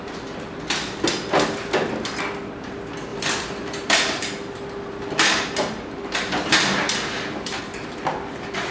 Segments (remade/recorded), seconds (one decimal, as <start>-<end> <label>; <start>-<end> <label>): 0.0-3.1 recorded; 3.1-7.6 remade; 7.6-8.7 recorded